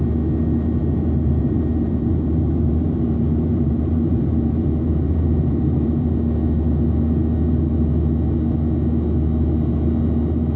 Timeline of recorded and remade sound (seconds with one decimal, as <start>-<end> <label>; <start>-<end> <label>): 0.0-0.8 recorded; 0.8-6.1 remade; 6.1-10.6 recorded

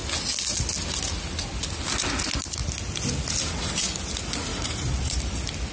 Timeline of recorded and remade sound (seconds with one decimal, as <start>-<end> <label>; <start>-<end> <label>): 0.0-4.5 recorded; 4.5-5.2 remade; 5.2-5.7 recorded

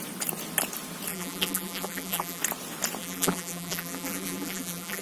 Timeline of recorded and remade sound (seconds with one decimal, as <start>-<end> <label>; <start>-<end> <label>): 0.0-1.1 recorded; 1.1-2.4 remade; 2.4-3.0 recorded; 3.0-5.0 remade

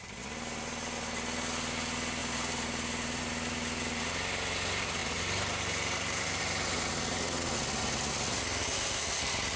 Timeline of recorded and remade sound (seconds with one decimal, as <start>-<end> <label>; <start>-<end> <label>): 0.0-2.2 recorded; 2.2-3.2 remade; 3.2-5.0 recorded; 5.0-6.9 remade; 6.9-9.6 recorded

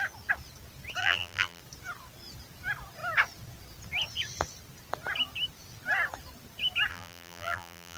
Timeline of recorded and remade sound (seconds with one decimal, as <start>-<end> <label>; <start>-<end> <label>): 0.0-1.0 recorded; 1.0-1.6 remade; 1.6-6.9 recorded; 6.9-8.0 remade